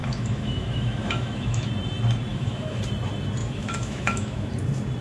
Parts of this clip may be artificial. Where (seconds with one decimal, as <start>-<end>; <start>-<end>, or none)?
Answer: 0.0-1.7; 2.3-2.8; 3.4-4.5